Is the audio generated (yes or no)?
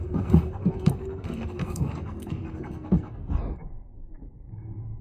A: yes